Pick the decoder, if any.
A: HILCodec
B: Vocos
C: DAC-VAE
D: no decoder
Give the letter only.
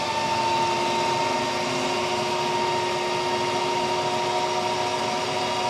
D